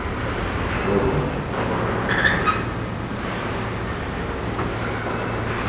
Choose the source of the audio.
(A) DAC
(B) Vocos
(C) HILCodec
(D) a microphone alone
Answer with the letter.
D